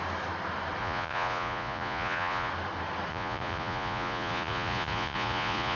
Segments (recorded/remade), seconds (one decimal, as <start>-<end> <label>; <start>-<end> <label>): 0.0-0.8 recorded; 0.8-2.5 remade; 2.5-3.1 recorded; 3.1-5.8 remade